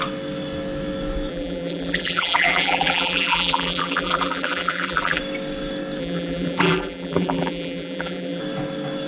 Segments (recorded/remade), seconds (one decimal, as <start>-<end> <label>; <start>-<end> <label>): 0.0-1.3 recorded; 1.3-5.2 remade; 5.2-6.0 recorded; 6.0-8.4 remade; 8.4-9.1 recorded